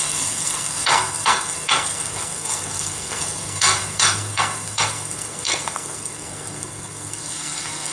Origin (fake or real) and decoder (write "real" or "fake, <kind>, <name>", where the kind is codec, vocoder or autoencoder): fake, codec, SNAC